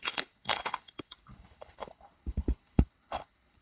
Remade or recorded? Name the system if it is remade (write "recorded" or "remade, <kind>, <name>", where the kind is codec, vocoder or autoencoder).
remade, codec, HILCodec